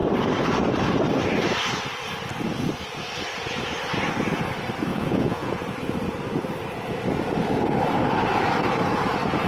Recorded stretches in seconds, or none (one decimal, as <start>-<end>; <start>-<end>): 0.0-4.9; 5.5-9.5